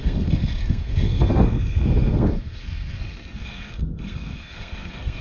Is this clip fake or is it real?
fake